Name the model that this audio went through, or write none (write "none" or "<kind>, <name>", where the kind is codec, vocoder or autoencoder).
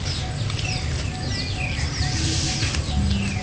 none